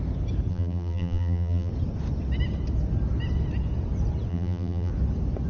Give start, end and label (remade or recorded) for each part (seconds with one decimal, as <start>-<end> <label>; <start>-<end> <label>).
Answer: 0.0-0.5 recorded; 0.5-1.7 remade; 1.7-4.3 recorded; 4.3-4.9 remade; 4.9-5.5 recorded